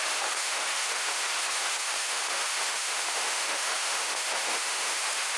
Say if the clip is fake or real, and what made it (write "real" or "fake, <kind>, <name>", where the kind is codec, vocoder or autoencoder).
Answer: fake, autoencoder, DAC-VAE